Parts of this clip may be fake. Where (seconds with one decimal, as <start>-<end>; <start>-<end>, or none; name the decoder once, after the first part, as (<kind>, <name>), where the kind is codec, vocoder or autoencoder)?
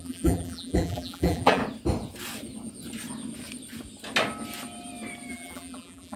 0.0-1.6 (vocoder, BigVGAN v2); 5.3-6.2